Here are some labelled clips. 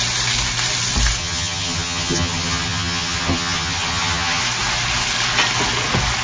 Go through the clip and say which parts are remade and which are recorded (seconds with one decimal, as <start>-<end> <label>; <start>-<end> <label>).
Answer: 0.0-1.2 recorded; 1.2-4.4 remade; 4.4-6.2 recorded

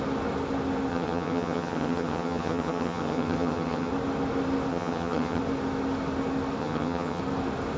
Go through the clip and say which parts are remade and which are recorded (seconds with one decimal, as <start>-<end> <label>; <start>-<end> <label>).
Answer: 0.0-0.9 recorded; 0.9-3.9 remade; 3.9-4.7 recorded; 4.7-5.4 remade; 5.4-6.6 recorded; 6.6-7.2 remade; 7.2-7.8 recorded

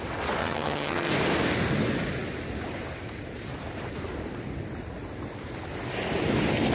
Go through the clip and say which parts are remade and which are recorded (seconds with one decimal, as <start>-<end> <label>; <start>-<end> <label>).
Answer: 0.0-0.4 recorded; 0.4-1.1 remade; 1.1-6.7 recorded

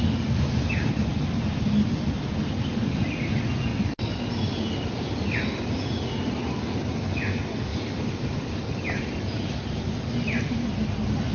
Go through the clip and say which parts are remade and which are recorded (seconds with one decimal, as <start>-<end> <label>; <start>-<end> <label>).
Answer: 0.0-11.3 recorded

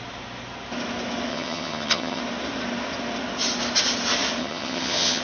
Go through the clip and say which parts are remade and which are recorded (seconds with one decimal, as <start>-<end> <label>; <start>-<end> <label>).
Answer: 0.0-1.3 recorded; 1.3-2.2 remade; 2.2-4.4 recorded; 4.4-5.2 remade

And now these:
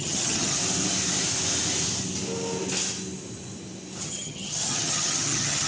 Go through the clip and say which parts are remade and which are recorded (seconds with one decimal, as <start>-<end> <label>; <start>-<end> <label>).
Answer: 0.0-0.6 remade; 0.6-4.0 recorded; 4.0-5.7 remade